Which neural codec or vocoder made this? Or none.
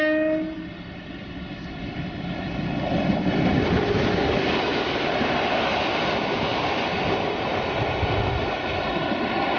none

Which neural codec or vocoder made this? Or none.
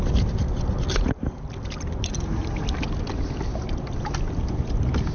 none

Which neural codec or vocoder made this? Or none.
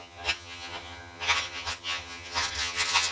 vocoder, HiFi-GAN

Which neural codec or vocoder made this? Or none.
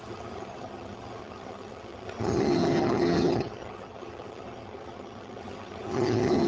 vocoder, HiFi-GAN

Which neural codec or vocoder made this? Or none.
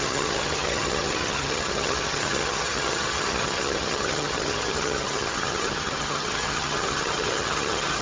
vocoder, HiFi-GAN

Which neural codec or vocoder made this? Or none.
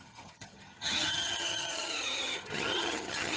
vocoder, HiFi-GAN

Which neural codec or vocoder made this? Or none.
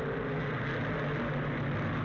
none